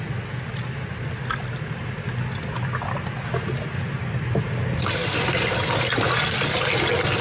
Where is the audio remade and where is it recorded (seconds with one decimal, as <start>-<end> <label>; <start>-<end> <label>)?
0.0-7.2 recorded

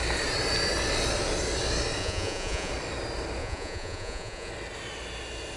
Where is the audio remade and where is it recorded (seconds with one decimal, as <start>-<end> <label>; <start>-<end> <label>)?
0.0-2.0 recorded; 2.0-2.7 remade; 2.7-3.4 recorded; 3.4-4.5 remade; 4.5-5.6 recorded

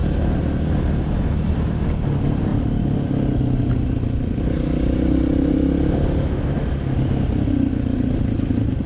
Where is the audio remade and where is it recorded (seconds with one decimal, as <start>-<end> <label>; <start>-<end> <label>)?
0.0-8.9 recorded

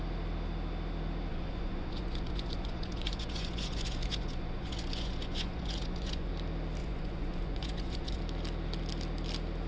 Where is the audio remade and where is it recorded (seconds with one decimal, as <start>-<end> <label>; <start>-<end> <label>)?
0.0-1.3 recorded; 1.3-6.3 remade; 6.3-6.8 recorded; 6.8-8.2 remade; 8.2-9.7 recorded

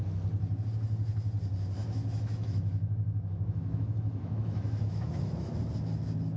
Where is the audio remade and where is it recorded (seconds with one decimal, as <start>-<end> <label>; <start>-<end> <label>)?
0.0-1.8 recorded; 1.8-5.6 remade; 5.6-6.4 recorded